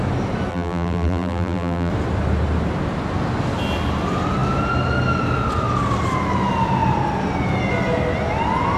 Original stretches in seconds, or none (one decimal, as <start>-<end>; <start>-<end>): 0.0-0.5; 1.9-8.8

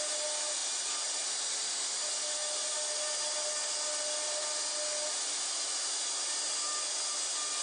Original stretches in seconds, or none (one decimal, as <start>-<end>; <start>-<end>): 0.0-7.6

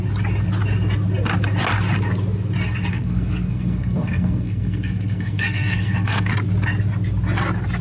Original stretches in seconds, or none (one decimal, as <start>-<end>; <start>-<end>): 0.0-2.9; 6.3-7.8

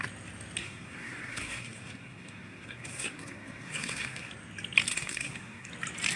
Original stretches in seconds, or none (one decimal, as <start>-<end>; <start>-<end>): 0.0-0.6; 4.3-4.9; 5.7-6.2

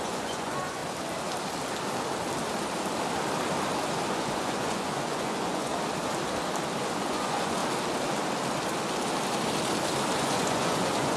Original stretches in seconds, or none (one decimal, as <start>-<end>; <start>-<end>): 0.8-4.1; 5.7-6.8; 7.6-10.2

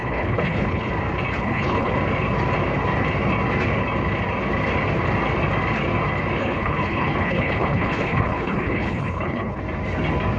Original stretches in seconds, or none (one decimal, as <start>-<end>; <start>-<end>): 0.9-1.4; 1.9-6.4; 9.6-10.4

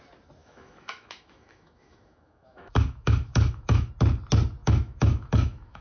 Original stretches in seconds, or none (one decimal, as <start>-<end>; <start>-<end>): 0.0-0.4; 3.9-4.6